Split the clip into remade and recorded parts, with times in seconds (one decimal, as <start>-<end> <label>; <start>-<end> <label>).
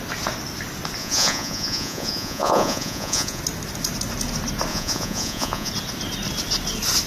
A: 0.0-1.0 recorded; 1.0-3.4 remade; 3.4-4.7 recorded; 4.7-5.7 remade; 5.7-7.1 recorded